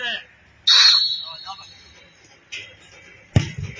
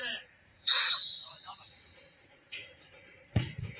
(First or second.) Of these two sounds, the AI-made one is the second